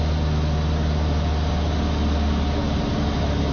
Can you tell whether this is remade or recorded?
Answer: recorded